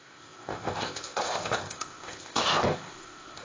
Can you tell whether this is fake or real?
fake